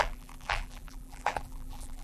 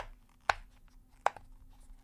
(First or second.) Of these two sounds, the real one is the second